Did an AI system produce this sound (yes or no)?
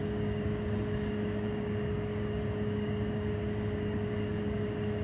yes